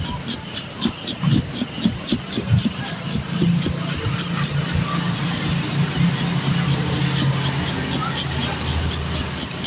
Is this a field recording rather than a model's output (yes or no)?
yes